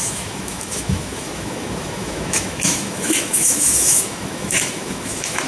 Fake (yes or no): yes